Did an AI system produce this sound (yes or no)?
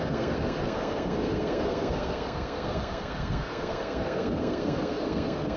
yes